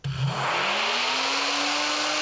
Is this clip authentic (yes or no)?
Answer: yes